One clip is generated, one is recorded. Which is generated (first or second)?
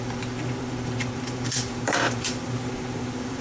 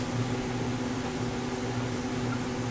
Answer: first